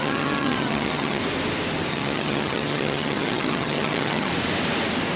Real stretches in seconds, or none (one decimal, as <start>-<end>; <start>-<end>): 1.2-1.9; 4.3-5.2